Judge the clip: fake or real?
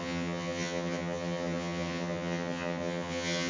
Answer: fake